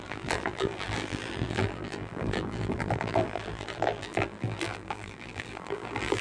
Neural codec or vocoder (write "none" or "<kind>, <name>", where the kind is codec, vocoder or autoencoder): vocoder, BigVGAN v2